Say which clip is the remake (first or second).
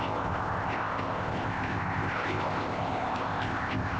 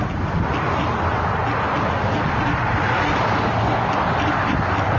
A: first